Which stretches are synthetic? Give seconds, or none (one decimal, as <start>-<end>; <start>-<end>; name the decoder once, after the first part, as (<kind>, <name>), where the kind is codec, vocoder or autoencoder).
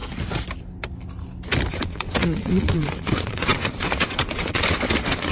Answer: 1.7-5.3 (vocoder, WaveNeXt)